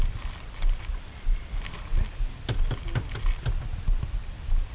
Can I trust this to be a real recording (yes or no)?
yes